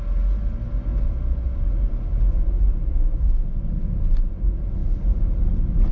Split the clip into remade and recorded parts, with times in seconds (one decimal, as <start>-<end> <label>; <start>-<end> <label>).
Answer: 0.0-0.9 recorded; 0.9-1.4 remade; 1.4-5.9 recorded